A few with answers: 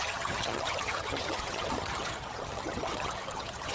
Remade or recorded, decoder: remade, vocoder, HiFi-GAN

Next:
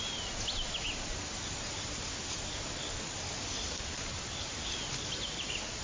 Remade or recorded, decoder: recorded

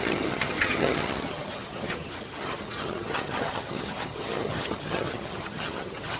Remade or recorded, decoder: remade, vocoder, HiFi-GAN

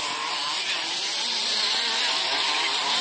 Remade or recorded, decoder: recorded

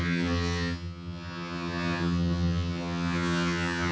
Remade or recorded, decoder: remade, vocoder, HiFi-GAN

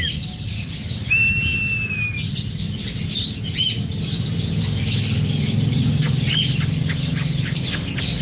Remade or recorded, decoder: recorded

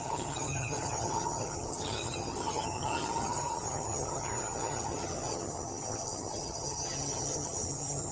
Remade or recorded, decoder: remade, vocoder, HiFi-GAN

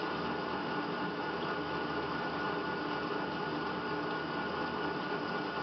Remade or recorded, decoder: recorded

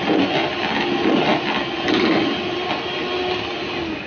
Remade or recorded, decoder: recorded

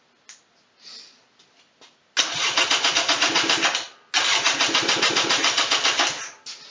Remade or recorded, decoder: recorded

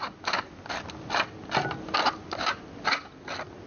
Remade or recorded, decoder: recorded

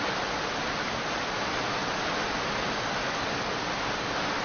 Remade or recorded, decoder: recorded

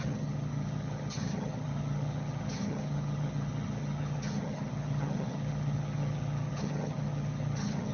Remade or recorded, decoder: remade, vocoder, HiFi-GAN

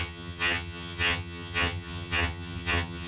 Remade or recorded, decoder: remade, vocoder, HiFi-GAN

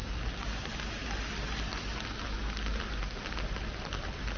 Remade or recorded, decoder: recorded